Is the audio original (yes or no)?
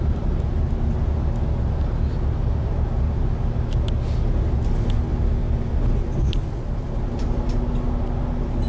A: yes